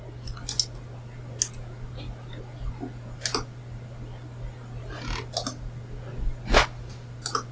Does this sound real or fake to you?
real